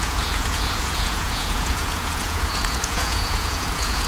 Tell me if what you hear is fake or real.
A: fake